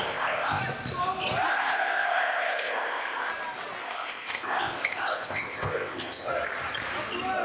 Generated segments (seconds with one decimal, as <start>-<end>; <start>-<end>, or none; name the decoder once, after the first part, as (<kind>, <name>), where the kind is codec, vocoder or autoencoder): 0.0-0.6 (codec, ZipCodec); 1.5-3.3; 3.8-6.3